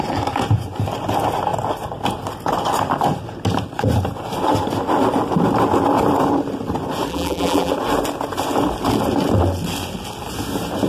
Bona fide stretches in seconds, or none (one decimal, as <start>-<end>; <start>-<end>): 0.0-7.1; 7.7-10.9

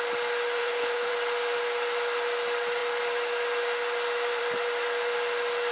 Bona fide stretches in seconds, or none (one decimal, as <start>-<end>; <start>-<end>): 0.0-0.6; 1.1-5.7

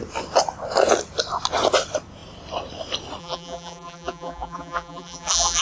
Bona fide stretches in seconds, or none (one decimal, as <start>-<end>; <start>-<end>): 0.0-3.2

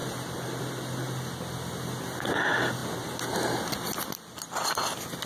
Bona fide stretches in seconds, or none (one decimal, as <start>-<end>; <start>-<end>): 0.0-5.3